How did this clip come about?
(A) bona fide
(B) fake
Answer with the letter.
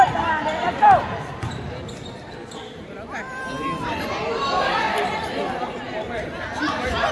B